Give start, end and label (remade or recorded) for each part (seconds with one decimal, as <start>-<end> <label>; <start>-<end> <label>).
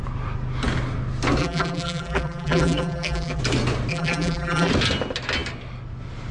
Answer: 0.0-1.4 recorded; 1.4-3.4 remade; 3.4-3.9 recorded; 3.9-4.7 remade; 4.7-6.3 recorded